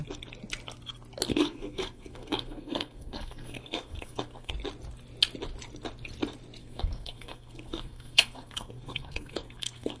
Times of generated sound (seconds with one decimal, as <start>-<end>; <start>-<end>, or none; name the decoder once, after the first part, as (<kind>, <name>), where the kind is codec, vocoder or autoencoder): 1.3-4.5 (codec, SNAC); 6.6-10.0